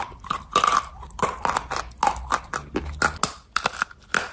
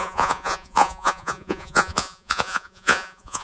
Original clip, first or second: first